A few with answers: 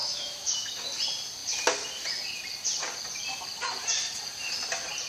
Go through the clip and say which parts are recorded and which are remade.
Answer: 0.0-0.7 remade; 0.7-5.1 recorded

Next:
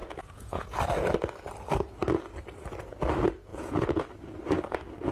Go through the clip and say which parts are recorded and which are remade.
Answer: 0.0-0.8 remade; 0.8-3.5 recorded; 3.5-4.0 remade; 4.0-5.1 recorded

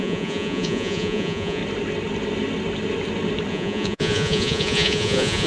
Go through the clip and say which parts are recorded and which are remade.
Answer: 0.0-1.6 remade; 1.6-3.5 recorded; 3.5-5.5 remade

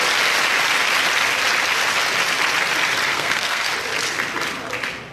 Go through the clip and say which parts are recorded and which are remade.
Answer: 0.0-3.1 recorded; 3.1-3.7 remade; 3.7-5.1 recorded